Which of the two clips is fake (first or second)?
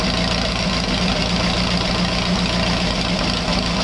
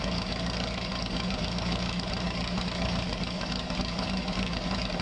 second